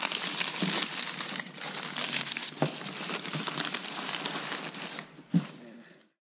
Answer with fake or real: real